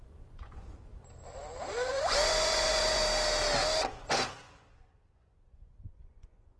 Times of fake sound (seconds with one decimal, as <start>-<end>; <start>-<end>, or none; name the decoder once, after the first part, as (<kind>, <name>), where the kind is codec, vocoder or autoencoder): 0.0-0.9 (vocoder, Vocos); 1.9-3.0; 3.9-6.6